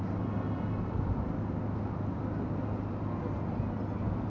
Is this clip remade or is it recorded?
recorded